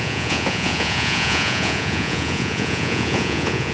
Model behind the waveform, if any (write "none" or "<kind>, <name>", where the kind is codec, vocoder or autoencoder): vocoder, Vocos